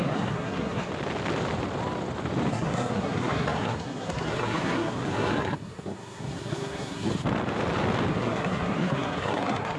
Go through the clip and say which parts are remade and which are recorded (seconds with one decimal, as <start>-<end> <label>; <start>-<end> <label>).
0.0-0.9 remade; 0.9-2.5 recorded; 2.5-7.1 remade; 7.1-8.1 recorded; 8.1-9.8 remade